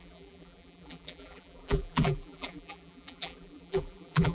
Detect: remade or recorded remade